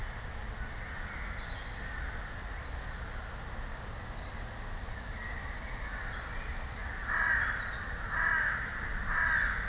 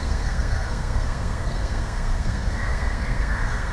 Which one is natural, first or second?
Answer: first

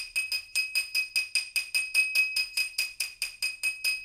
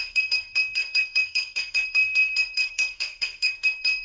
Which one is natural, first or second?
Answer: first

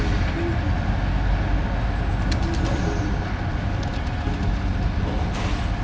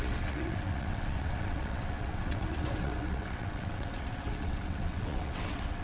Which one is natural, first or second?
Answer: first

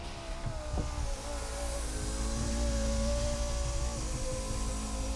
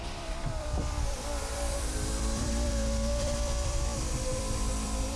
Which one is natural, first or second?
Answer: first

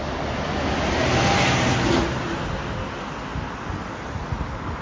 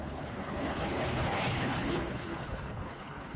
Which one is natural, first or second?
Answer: first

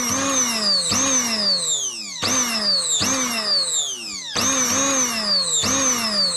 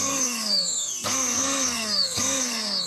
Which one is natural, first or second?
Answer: first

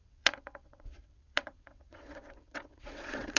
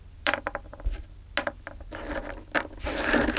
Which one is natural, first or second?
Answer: second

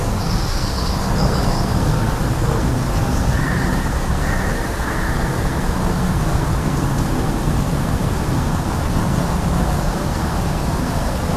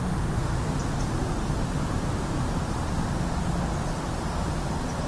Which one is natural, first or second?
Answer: second